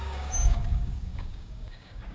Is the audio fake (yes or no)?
yes